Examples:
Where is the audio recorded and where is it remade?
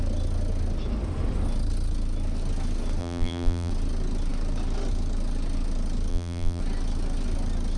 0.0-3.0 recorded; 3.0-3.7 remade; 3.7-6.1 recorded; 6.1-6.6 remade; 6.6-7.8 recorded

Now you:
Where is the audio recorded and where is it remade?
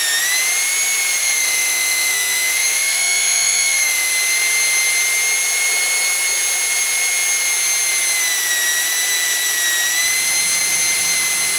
0.0-1.2 recorded; 1.2-4.1 remade; 4.1-11.6 recorded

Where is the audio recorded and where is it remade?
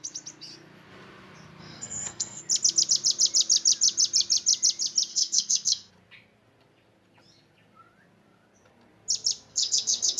0.0-1.6 recorded; 1.6-2.4 remade; 2.4-5.1 recorded; 5.1-5.9 remade; 5.9-9.5 recorded; 9.5-10.2 remade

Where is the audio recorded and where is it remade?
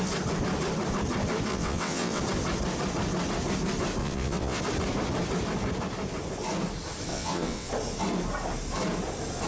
0.0-1.5 recorded; 1.5-2.2 remade; 2.2-4.0 recorded; 4.0-4.6 remade; 4.6-7.1 recorded; 7.1-7.7 remade; 7.7-9.5 recorded